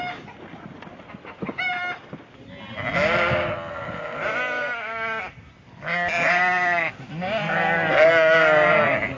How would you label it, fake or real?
real